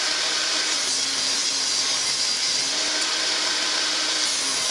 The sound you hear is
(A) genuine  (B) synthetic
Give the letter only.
A